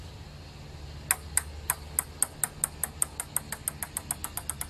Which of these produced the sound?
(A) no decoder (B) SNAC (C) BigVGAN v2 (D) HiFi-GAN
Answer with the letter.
A